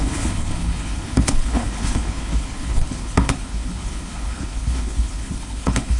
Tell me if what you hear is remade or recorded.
remade